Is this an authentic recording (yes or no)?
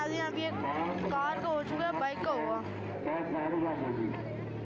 yes